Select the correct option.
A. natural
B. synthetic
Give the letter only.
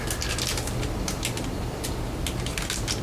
A